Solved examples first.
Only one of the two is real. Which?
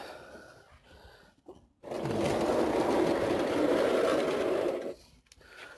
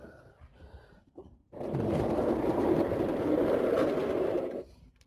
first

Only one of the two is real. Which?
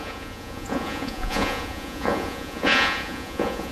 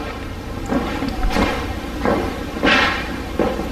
second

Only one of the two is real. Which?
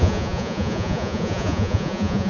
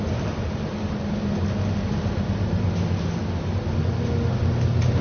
second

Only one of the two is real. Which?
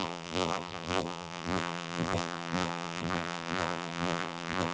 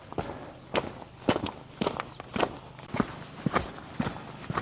second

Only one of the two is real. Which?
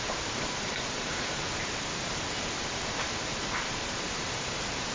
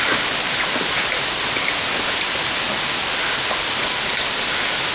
second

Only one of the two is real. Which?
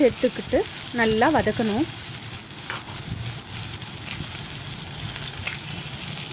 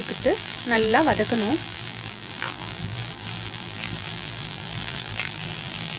first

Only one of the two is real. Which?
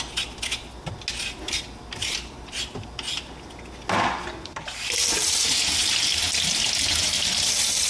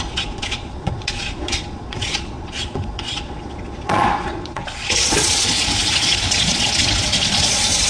first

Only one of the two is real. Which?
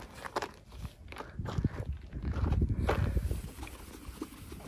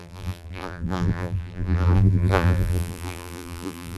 first